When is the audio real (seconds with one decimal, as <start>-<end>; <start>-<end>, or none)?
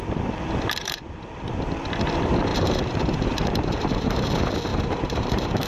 0.0-0.8; 1.3-2.5; 4.3-4.7